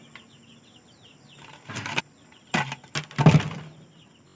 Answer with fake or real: real